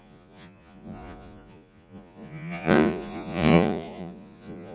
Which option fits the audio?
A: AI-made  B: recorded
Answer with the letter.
A